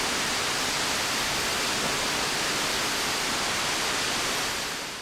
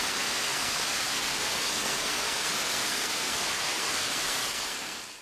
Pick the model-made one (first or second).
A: second